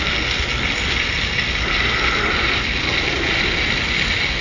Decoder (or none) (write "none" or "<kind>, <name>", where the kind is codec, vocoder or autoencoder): none